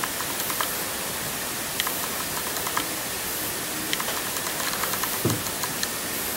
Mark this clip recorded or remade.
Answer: recorded